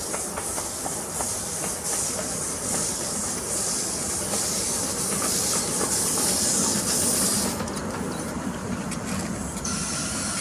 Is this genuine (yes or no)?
no